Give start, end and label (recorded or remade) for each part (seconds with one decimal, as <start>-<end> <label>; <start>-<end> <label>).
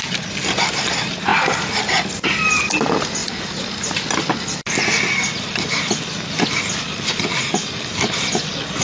0.0-8.8 recorded